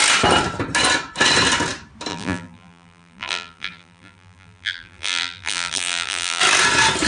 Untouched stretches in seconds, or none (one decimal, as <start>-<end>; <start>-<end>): 0.0-2.1; 6.4-7.1